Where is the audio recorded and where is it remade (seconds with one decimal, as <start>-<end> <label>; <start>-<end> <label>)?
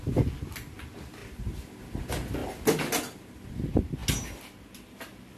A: 0.0-5.4 recorded